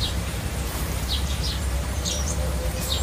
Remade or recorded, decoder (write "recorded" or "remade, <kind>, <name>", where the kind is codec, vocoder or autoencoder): remade, vocoder, BigVGAN v2